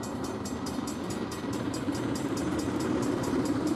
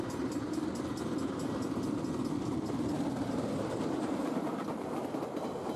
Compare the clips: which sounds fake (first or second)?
first